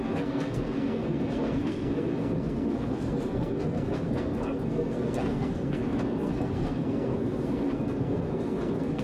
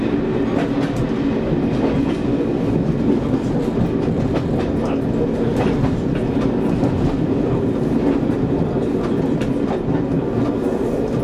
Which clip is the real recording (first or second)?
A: second